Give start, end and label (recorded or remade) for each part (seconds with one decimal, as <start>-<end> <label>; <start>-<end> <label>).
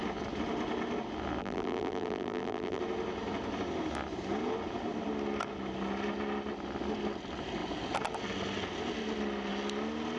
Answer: 0.0-1.4 recorded; 1.4-2.8 remade; 2.8-10.2 recorded